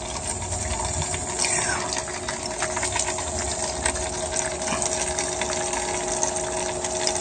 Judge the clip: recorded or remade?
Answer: remade